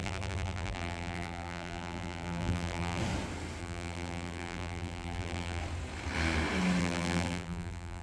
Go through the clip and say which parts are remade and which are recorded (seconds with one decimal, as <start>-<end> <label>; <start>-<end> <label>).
0.0-3.0 remade; 3.0-3.6 recorded; 3.6-5.6 remade; 5.6-6.8 recorded; 6.8-8.0 remade